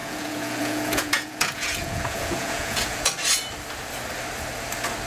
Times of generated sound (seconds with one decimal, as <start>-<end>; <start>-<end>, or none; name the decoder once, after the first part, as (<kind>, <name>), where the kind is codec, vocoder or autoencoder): 0.0-3.1 (vocoder, Vocos)

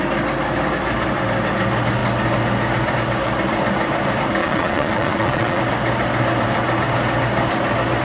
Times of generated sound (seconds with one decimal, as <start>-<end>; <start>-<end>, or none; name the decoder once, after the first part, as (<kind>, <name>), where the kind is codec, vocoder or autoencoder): 4.4-5.6 (vocoder, Vocos)

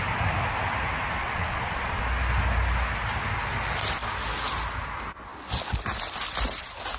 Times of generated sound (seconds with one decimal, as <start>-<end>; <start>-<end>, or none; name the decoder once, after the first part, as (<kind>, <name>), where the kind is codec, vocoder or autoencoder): 1.2-2.0 (vocoder, Vocos)